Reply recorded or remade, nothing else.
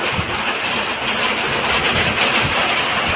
recorded